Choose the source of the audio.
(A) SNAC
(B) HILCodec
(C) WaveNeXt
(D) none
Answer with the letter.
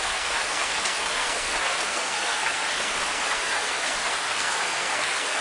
A